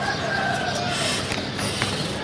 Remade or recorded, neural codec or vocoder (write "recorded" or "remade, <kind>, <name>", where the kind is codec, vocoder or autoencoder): recorded